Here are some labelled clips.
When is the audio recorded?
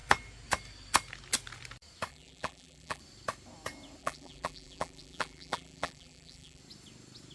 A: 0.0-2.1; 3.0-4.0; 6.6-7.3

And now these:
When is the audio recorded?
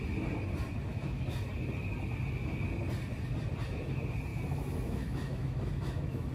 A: 0.0-0.9; 1.5-4.3